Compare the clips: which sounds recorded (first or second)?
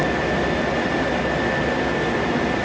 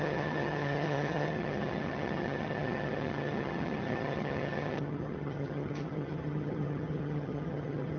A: first